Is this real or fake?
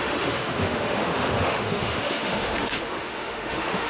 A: fake